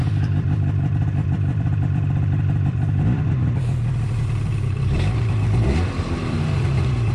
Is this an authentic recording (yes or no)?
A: no